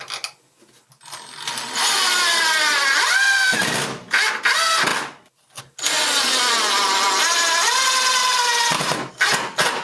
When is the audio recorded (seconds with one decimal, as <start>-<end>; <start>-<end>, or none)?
0.0-9.8